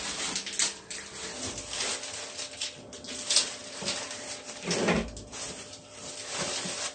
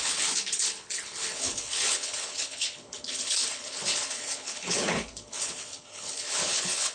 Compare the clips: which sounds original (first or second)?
first